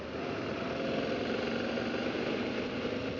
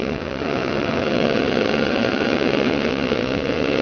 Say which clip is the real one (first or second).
first